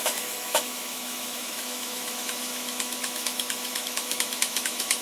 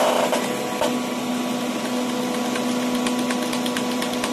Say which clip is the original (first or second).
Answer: second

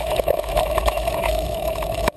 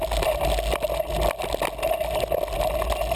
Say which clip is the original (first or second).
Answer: second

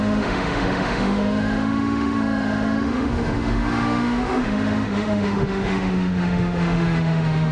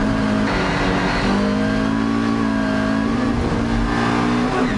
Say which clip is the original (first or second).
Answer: second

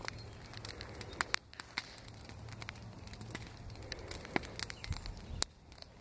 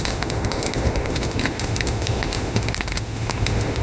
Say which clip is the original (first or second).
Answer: first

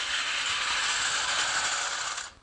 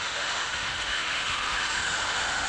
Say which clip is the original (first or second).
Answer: first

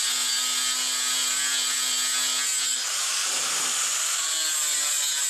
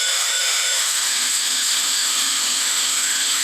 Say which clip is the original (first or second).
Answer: first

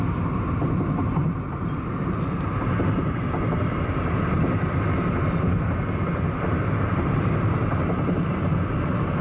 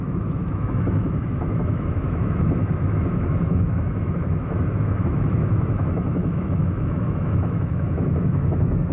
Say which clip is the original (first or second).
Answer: first